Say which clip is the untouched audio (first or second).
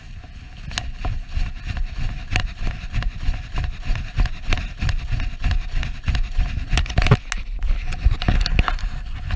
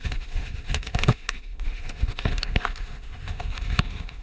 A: first